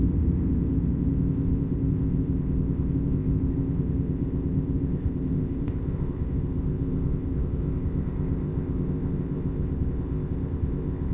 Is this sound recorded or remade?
remade